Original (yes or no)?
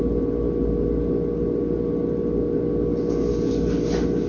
yes